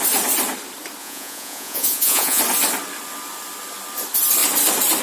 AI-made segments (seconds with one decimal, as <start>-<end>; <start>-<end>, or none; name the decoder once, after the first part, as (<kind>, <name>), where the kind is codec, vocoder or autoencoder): 1.0-2.4 (vocoder, Vocos)

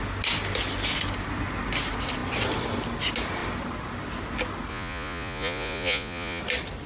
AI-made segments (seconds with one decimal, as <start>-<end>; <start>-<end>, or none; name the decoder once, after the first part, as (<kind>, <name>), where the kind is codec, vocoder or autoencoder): 4.7-6.4 (vocoder, Vocos)

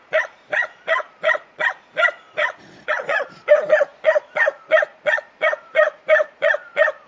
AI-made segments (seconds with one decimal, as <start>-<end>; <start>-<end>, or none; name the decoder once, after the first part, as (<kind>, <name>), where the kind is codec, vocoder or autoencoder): 0.0-7.1 (vocoder, Vocos)